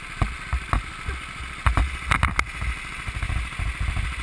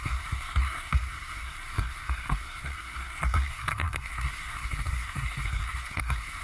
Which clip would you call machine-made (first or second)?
second